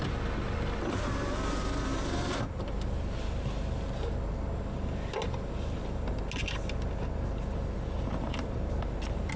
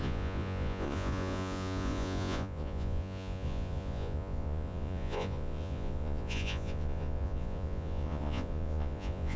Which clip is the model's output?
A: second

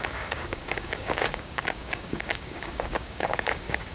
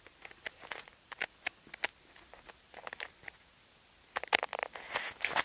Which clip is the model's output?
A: first